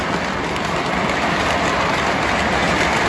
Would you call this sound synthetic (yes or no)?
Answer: no